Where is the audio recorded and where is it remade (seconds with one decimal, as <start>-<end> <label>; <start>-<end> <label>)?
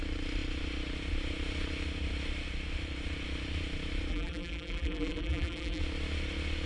0.0-4.1 recorded; 4.1-5.8 remade; 5.8-6.7 recorded